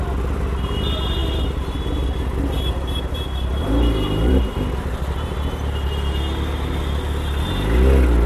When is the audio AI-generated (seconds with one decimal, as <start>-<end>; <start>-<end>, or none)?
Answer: none